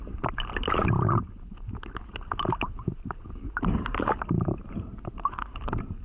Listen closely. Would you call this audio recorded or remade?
recorded